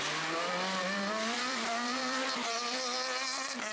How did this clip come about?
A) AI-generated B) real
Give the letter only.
A